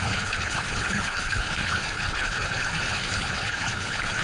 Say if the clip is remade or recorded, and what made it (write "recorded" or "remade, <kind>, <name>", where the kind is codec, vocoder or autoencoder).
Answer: remade, codec, HILCodec